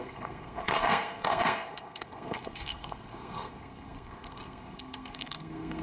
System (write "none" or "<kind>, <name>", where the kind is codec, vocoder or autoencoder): codec, SNAC